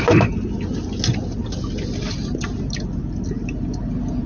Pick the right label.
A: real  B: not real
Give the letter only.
A